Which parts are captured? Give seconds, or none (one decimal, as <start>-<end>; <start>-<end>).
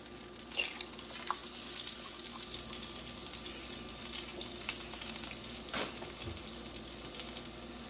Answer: 0.0-7.9